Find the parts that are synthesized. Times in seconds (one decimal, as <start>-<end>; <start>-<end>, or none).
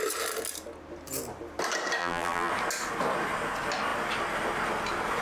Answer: 2.0-2.5